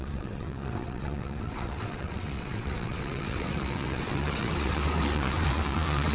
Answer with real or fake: fake